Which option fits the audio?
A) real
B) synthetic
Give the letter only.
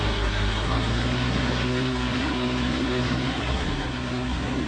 B